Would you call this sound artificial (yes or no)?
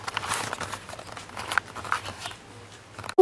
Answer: no